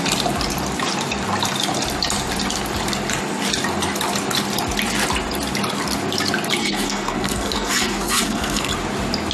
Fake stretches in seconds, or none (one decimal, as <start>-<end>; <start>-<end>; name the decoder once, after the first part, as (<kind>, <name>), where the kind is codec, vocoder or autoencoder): 6.6-8.7 (codec, SNAC)